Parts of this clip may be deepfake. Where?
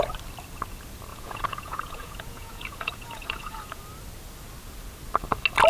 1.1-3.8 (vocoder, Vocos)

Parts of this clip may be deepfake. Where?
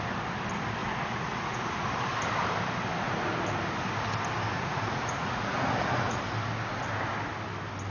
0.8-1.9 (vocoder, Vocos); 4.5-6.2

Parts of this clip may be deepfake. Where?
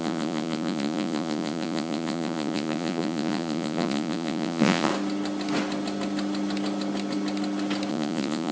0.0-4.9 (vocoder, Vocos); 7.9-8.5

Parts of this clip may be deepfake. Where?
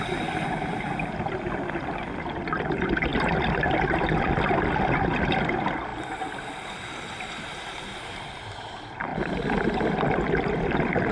none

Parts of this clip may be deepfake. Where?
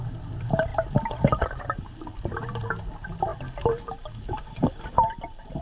none